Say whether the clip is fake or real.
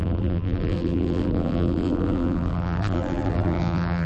fake